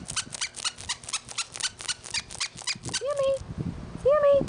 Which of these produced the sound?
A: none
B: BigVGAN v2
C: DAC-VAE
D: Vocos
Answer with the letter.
A